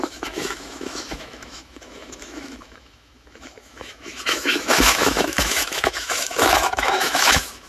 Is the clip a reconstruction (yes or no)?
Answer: yes